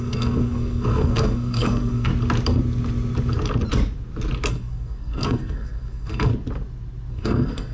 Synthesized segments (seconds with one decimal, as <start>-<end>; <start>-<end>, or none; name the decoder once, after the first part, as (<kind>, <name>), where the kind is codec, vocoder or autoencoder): 0.0-2.1 (codec, SNAC); 4.5-6.3; 7.1-7.7